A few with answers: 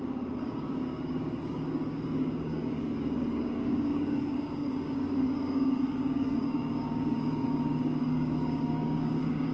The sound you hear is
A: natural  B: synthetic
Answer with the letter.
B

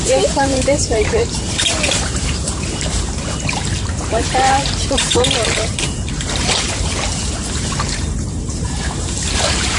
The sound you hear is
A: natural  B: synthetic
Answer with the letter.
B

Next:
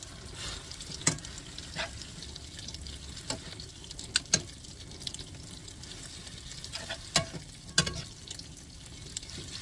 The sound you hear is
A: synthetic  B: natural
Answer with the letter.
B